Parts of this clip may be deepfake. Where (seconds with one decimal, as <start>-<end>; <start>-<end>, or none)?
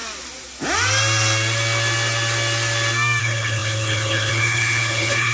3.2-5.3